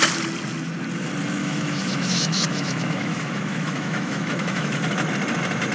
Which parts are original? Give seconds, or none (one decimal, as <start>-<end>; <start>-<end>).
0.0-1.4; 4.8-5.7